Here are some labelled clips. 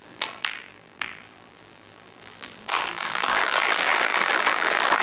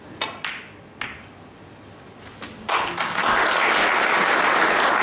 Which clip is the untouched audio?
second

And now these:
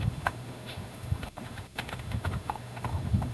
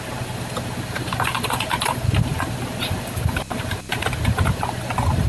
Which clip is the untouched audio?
second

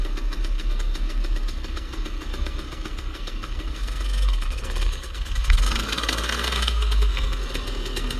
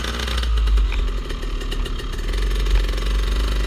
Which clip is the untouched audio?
second